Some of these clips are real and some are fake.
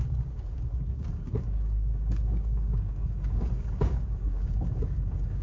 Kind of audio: fake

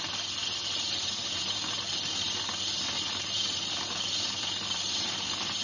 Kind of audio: real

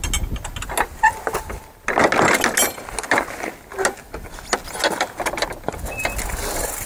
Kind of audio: real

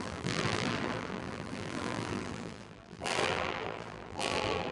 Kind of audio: fake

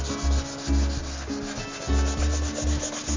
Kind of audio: real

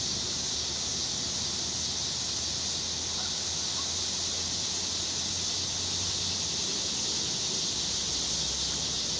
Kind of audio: real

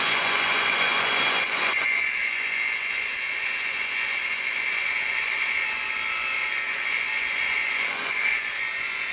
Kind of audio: fake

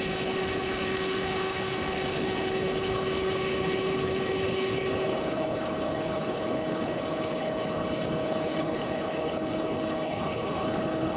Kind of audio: fake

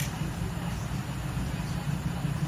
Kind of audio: real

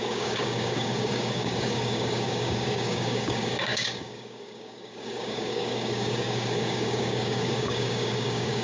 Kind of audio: fake